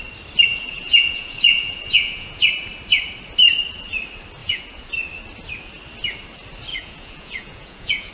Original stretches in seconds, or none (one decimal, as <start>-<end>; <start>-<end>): 0.0-0.5; 2.4-4.4; 4.9-6.7